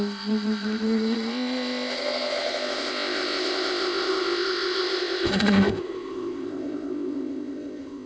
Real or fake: fake